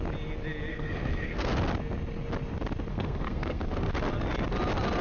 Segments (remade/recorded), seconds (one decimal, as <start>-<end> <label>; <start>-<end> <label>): 0.0-0.7 recorded; 0.7-1.5 remade; 1.5-2.9 recorded; 2.9-3.9 remade; 3.9-5.0 recorded